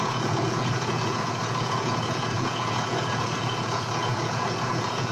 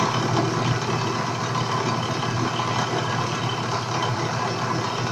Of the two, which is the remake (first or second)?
first